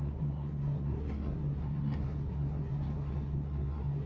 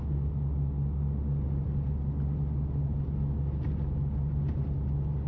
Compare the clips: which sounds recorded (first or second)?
second